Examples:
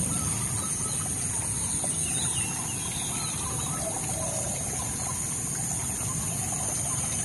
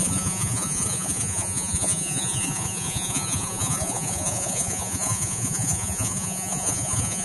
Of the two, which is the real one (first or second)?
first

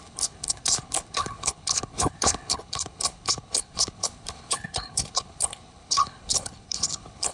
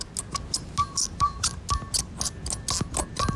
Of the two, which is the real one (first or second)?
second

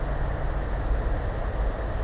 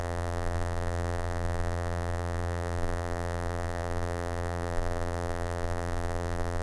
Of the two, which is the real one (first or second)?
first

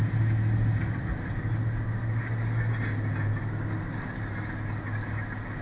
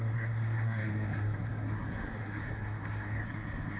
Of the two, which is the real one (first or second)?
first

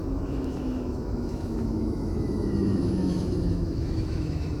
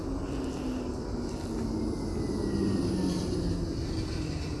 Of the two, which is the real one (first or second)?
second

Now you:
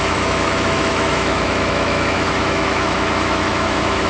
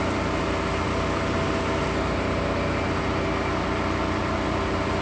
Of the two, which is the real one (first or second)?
second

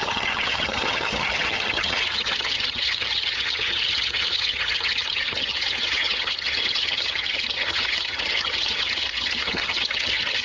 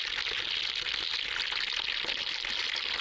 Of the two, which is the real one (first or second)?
second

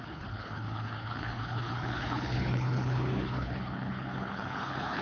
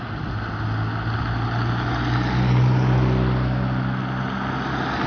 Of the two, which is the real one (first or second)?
second